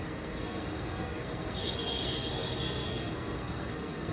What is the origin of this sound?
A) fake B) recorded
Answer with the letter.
A